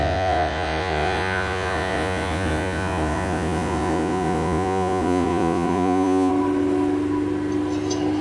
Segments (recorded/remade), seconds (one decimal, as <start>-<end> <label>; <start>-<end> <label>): 0.0-6.3 remade; 6.3-8.2 recorded